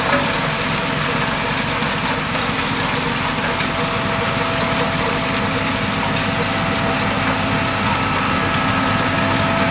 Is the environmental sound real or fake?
real